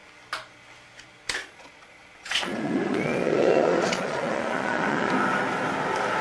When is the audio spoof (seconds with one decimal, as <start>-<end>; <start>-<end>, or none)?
1.4-5.1